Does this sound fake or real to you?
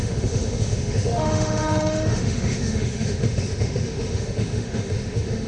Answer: fake